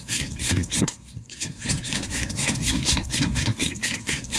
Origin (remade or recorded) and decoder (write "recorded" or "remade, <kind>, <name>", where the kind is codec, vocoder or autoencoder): remade, codec, SNAC